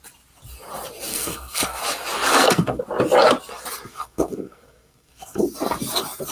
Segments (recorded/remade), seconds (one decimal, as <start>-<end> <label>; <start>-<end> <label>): 0.0-1.1 recorded; 1.1-1.8 remade; 1.8-2.3 recorded; 2.3-2.8 remade; 2.8-3.9 recorded; 3.9-5.4 remade; 5.4-6.3 recorded